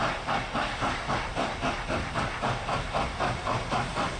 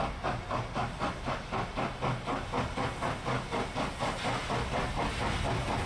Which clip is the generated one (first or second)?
first